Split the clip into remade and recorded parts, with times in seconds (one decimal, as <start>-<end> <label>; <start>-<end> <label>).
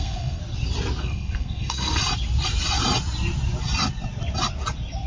0.0-0.4 remade; 0.4-1.0 recorded; 1.0-2.0 remade; 2.0-5.1 recorded